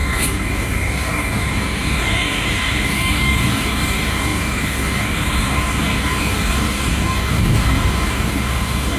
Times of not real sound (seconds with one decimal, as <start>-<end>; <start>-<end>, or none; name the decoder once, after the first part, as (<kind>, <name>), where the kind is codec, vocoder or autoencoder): 0.0-9.0 (codec, DAC)